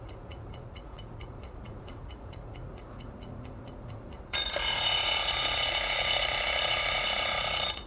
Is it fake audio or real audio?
fake